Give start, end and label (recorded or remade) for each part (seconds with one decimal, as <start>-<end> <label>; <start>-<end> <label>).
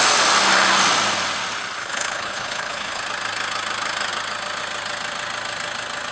0.0-1.8 recorded; 1.8-3.0 remade; 3.0-6.1 recorded